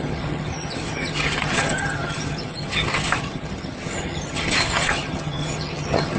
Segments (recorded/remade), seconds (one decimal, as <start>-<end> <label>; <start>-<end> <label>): 0.0-6.2 remade